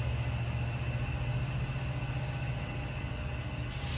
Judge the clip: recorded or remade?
recorded